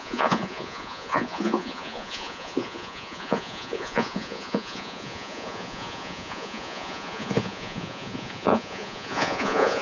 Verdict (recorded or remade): remade